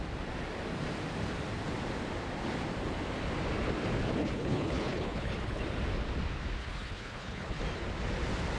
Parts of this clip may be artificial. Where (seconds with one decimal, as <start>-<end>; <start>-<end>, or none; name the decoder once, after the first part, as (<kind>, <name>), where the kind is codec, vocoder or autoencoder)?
4.2-5.6 (codec, HILCodec); 6.6-7.6